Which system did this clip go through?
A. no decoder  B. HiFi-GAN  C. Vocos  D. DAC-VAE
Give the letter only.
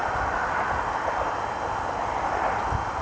A